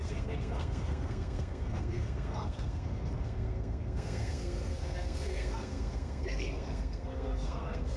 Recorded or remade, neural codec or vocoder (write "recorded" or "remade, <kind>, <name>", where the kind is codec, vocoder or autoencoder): remade, codec, SNAC